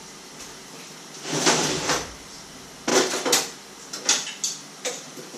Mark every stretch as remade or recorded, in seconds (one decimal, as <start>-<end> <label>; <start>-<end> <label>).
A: 0.0-2.9 remade; 2.9-4.0 recorded; 4.0-5.4 remade